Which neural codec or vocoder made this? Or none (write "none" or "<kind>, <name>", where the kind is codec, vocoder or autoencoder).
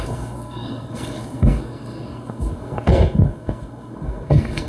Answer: codec, SNAC